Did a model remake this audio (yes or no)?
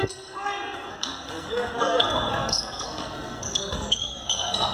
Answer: yes